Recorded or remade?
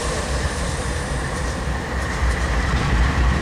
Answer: remade